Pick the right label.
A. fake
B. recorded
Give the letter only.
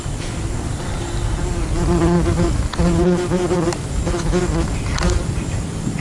B